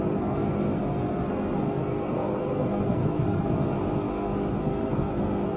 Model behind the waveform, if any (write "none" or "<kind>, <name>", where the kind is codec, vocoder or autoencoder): codec, SNAC